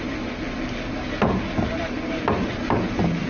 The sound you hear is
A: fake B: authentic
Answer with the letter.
B